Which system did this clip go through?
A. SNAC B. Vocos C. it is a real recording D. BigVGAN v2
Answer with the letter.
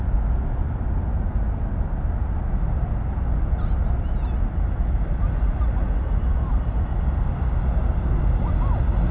C